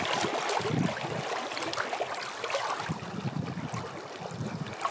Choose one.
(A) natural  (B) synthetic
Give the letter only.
A